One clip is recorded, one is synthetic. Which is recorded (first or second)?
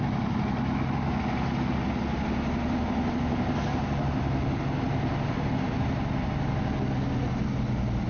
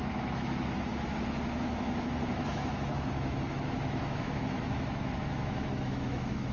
first